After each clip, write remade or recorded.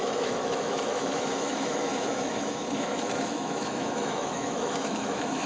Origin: remade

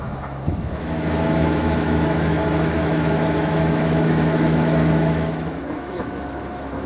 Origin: remade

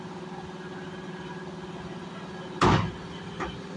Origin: recorded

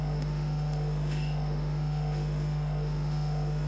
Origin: remade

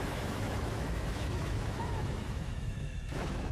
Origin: remade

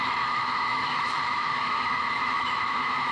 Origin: remade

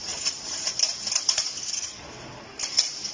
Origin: recorded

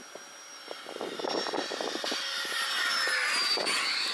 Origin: recorded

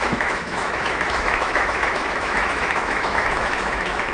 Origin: remade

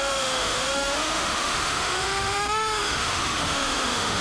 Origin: remade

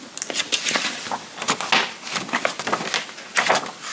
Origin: recorded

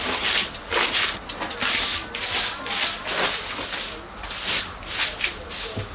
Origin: recorded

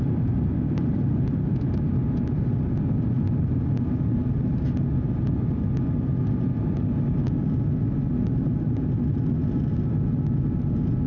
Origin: recorded